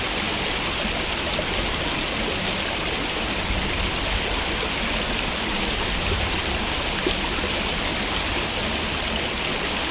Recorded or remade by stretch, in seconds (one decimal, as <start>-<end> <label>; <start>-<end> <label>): 0.0-9.9 recorded